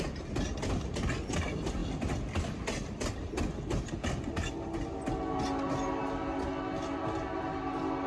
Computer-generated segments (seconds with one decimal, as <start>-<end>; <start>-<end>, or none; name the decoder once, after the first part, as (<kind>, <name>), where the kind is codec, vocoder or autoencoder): none